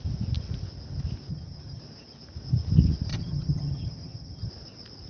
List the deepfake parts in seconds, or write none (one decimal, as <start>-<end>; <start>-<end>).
1.3-1.8; 3.1-4.5